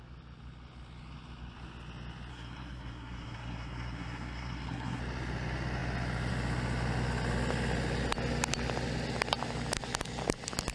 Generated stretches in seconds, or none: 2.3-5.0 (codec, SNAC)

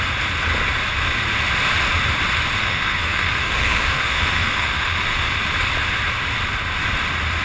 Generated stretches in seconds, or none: 2.6-5.4 (autoencoder, DAC-VAE)

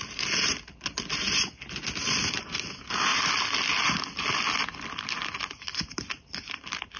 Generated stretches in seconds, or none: none

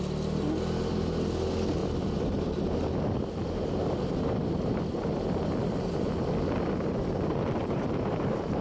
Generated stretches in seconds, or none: 1.8-4.7 (vocoder, BigVGAN v2); 7.6-8.6